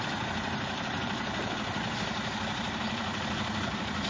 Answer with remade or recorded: remade